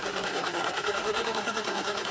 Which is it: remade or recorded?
remade